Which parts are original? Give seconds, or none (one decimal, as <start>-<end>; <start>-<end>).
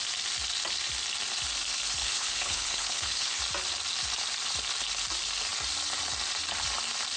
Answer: 0.0-2.0; 3.4-7.2